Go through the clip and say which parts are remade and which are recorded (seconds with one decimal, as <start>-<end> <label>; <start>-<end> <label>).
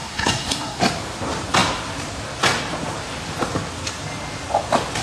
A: 0.0-0.8 remade; 0.8-5.0 recorded